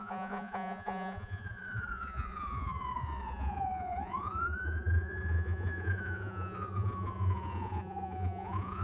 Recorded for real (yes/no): no